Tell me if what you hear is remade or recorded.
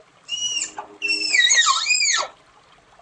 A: remade